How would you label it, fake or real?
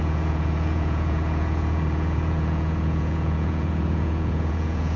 fake